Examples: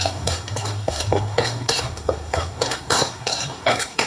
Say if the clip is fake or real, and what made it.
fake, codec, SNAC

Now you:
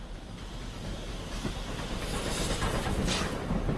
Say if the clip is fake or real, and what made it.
real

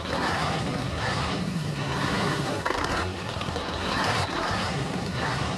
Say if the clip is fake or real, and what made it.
fake, codec, SNAC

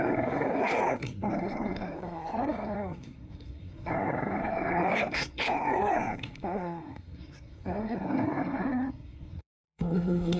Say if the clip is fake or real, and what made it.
fake, codec, SNAC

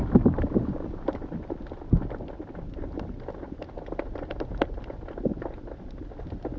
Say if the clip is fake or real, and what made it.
real